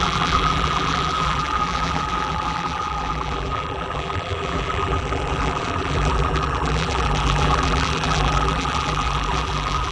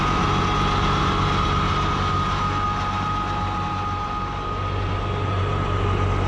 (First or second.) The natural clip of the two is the second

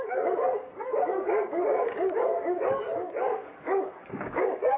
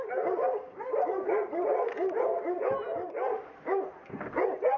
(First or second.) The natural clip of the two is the second